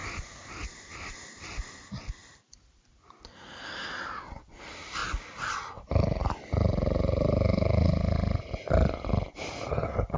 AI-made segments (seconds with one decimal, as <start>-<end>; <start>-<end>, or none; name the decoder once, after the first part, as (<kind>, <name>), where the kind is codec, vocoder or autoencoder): none